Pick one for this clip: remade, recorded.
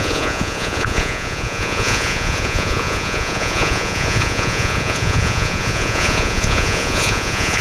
remade